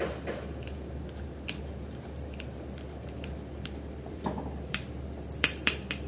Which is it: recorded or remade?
remade